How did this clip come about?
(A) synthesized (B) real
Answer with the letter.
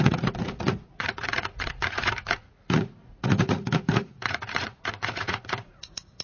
A